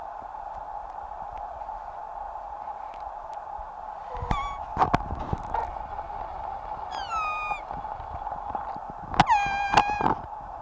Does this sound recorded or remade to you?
recorded